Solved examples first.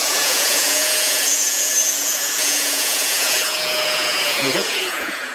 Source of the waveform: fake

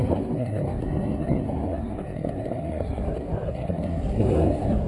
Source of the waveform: fake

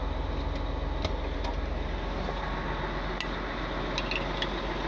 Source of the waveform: real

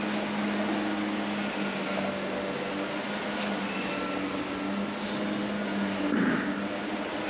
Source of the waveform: real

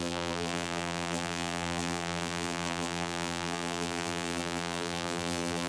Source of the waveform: fake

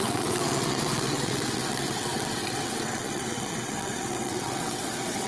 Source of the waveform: fake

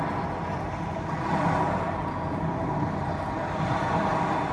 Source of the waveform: real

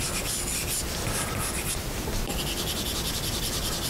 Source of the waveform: fake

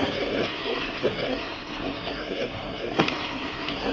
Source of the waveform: fake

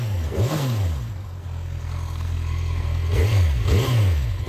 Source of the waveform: fake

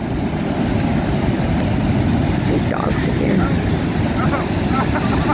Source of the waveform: real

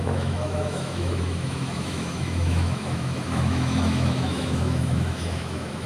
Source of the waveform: fake